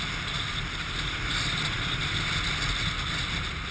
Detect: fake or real real